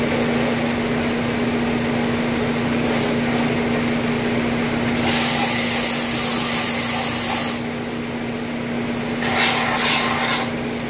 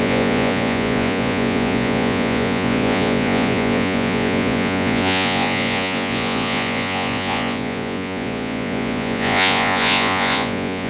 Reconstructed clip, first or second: second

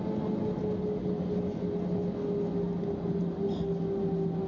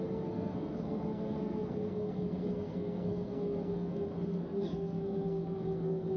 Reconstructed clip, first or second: second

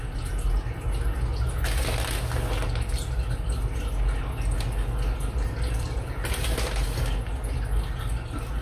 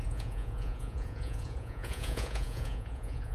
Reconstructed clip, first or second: second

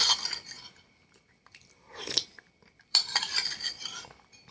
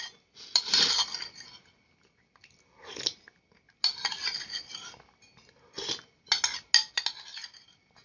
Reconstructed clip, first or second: first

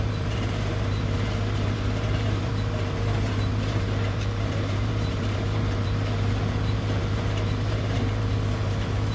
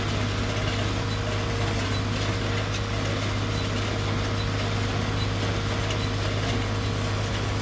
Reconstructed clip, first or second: first